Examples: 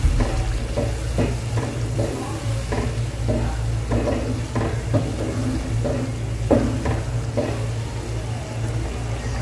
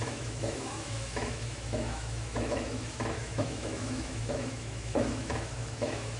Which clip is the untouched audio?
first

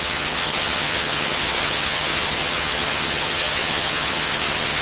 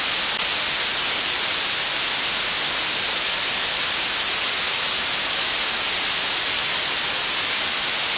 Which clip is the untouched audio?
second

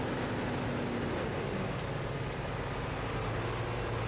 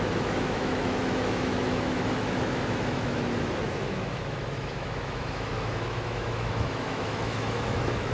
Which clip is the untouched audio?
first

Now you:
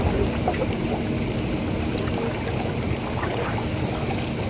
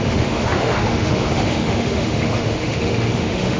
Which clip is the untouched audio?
first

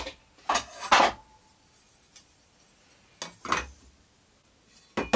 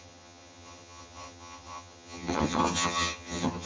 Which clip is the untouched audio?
first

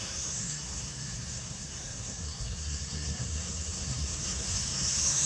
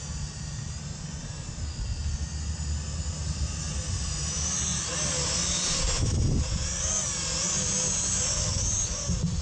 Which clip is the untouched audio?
second